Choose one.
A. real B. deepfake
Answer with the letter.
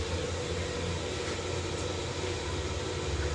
A